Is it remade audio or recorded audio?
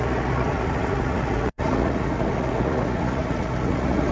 remade